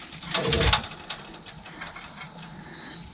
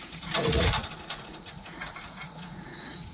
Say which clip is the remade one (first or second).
second